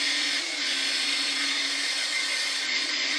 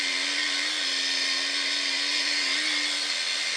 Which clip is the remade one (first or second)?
first